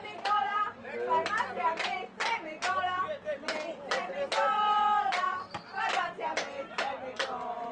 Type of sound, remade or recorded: recorded